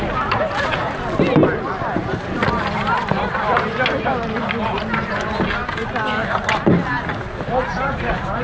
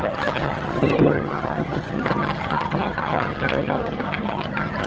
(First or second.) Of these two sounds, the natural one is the first